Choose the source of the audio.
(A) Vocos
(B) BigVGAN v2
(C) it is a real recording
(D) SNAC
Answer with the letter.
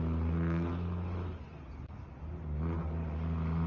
C